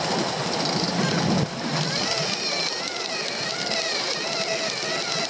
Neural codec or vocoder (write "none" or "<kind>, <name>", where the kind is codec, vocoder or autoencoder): none